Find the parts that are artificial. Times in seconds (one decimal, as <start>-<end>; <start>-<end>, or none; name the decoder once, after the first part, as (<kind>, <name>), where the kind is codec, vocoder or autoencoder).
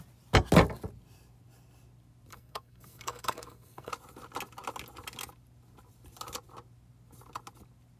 2.3-3.9 (codec, SNAC)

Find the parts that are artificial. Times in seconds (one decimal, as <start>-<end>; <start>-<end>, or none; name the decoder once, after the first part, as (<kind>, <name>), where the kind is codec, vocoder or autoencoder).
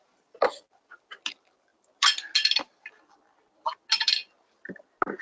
none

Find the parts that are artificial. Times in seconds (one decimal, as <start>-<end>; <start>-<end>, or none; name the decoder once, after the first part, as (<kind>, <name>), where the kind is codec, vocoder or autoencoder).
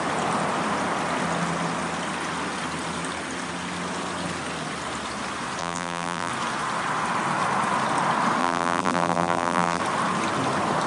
5.6-6.3 (vocoder, BigVGAN v2); 8.4-9.8